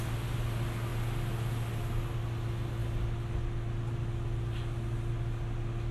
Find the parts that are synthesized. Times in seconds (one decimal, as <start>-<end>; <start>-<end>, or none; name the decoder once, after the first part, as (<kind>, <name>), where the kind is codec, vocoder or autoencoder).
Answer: none